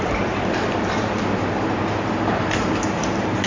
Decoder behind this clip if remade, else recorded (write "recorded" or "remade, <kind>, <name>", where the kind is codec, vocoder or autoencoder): remade, vocoder, BigVGAN v2